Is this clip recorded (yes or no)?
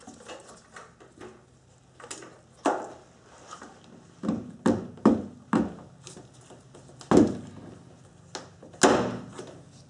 yes